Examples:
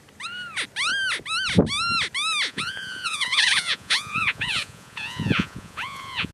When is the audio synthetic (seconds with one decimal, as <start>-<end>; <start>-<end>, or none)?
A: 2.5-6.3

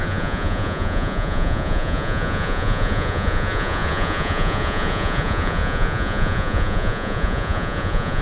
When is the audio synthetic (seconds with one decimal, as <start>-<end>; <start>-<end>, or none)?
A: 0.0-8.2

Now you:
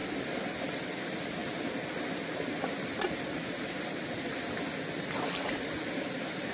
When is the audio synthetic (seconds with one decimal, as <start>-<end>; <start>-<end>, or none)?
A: none

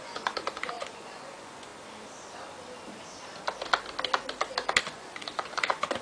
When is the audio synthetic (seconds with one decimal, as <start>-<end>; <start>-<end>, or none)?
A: 0.0-1.7; 4.8-6.0

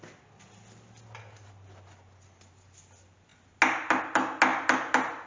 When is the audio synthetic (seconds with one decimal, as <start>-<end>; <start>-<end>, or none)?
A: none